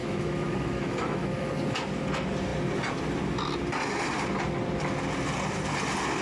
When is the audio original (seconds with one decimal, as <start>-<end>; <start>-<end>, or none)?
1.5-6.2